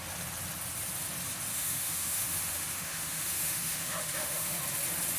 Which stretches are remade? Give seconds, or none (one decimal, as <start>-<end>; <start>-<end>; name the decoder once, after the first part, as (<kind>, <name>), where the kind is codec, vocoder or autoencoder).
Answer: 1.5-4.6 (autoencoder, DAC-VAE)